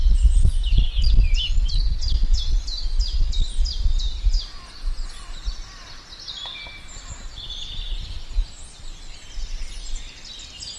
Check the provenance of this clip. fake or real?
real